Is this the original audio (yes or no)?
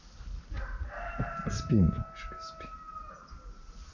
yes